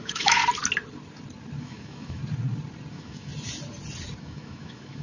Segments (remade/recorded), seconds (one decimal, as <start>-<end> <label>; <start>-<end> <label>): 0.0-0.4 remade; 0.4-1.6 recorded; 1.6-2.2 remade; 2.2-2.9 recorded; 2.9-3.3 remade; 3.3-4.2 recorded; 4.2-5.0 remade